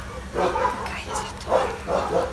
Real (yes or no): yes